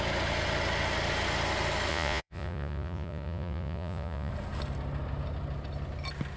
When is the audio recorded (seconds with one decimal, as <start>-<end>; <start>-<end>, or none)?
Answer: 0.0-1.9; 4.3-6.4